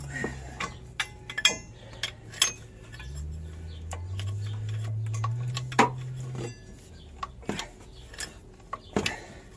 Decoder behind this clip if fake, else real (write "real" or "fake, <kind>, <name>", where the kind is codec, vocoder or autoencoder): real